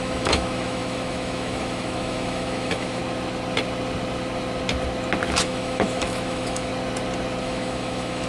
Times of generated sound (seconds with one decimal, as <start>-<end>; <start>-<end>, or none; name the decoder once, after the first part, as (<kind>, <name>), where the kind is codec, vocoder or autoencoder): 0.0-3.0 (autoencoder, DAC-VAE); 5.4-6.7; 7.4-8.3